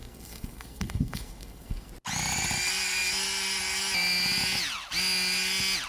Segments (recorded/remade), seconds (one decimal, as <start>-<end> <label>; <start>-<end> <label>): 0.0-1.9 remade; 1.9-5.9 recorded